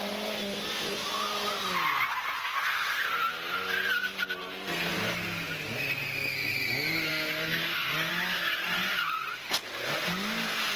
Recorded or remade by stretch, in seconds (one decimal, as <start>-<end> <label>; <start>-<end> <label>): 0.0-2.4 recorded; 2.4-3.1 remade; 3.1-4.4 recorded; 4.4-4.9 remade; 4.9-7.1 recorded; 7.1-8.1 remade; 8.1-10.8 recorded